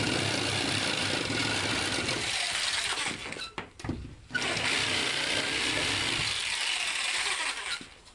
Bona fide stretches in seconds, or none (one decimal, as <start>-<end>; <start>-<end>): 0.0-8.1